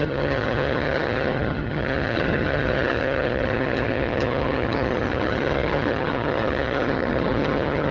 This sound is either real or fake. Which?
fake